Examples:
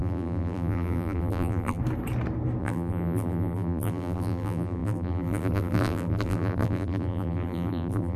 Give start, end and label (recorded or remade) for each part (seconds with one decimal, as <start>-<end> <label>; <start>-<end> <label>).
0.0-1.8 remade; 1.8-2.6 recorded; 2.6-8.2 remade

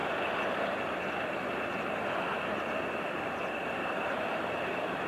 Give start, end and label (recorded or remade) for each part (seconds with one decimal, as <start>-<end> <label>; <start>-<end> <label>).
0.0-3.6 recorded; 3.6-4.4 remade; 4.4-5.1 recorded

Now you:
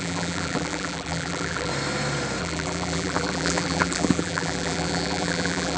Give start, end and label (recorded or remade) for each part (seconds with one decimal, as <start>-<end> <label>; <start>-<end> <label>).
0.0-1.7 remade; 1.7-2.4 recorded; 2.4-5.8 remade

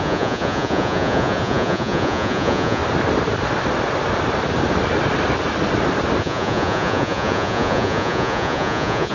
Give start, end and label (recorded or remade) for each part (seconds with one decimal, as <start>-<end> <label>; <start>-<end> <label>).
0.0-2.8 remade; 2.8-6.2 recorded; 6.2-9.1 remade